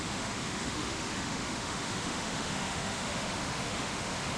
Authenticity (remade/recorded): remade